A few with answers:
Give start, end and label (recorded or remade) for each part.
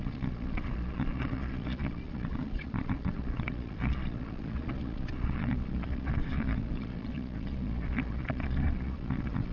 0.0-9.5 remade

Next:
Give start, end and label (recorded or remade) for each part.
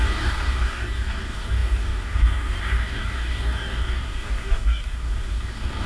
0.0-5.9 remade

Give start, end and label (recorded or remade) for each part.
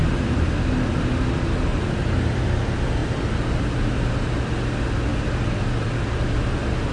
0.0-0.6 remade; 0.6-1.7 recorded; 1.7-2.4 remade; 2.4-3.0 recorded; 3.0-3.6 remade; 3.6-6.9 recorded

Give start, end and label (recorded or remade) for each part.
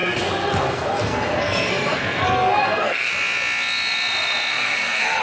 0.0-3.1 remade; 3.1-4.5 recorded; 4.5-5.2 remade